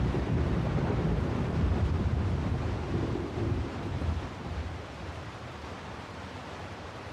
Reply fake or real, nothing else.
fake